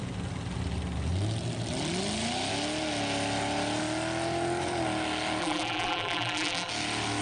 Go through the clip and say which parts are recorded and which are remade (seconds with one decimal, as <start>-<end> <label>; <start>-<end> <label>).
0.0-5.4 recorded; 5.4-6.7 remade; 6.7-7.2 recorded